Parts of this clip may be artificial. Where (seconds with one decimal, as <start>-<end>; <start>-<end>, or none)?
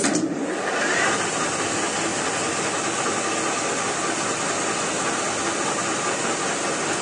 none